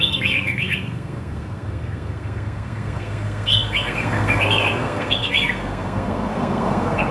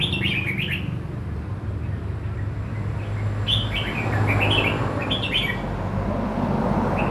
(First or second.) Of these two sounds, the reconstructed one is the first